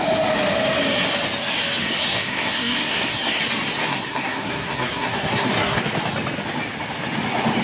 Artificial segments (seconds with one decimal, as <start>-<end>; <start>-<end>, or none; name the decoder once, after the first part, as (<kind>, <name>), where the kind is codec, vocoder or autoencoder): 1.8-3.4 (codec, SNAC); 3.8-5.8